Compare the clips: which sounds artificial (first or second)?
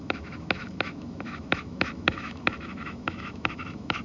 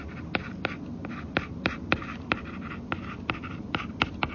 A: first